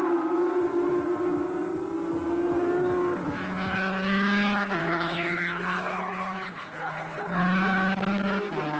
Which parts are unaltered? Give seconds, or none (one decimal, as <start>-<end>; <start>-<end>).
0.0-4.8; 7.4-8.8